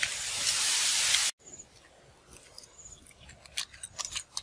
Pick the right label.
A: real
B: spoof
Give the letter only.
A